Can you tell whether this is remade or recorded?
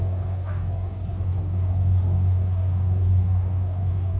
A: remade